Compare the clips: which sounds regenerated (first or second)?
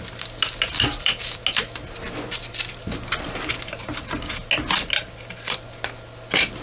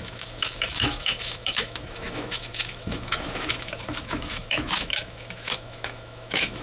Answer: second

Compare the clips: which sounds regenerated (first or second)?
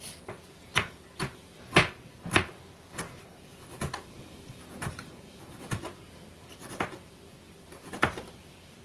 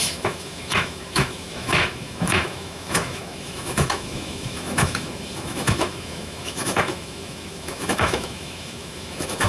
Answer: second